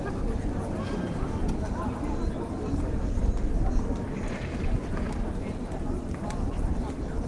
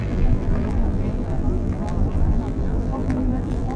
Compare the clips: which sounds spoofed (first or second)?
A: second